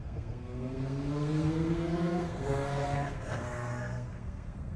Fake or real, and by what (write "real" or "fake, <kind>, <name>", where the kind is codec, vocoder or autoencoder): fake, codec, SNAC